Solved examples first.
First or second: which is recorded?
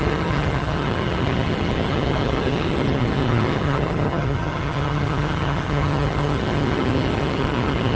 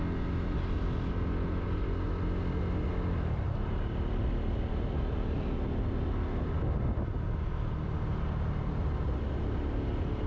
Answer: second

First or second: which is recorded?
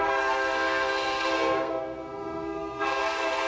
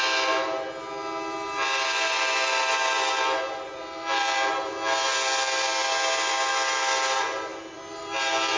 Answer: second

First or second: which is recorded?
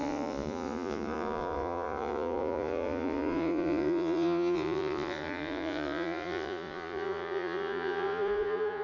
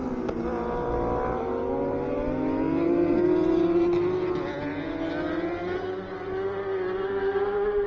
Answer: second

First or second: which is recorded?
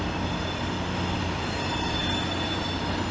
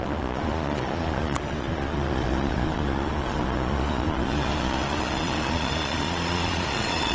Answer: first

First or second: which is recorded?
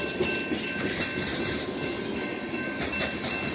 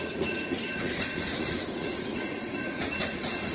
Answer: first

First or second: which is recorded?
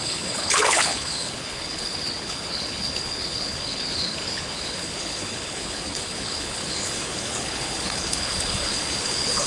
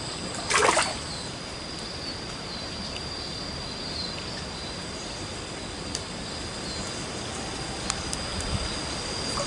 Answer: second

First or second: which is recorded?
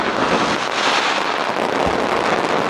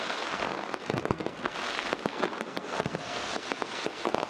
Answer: first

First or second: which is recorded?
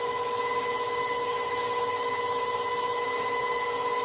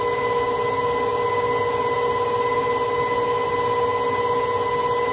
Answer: second